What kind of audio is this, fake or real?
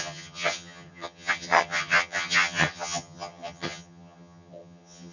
fake